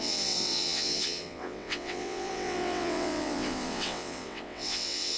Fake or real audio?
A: fake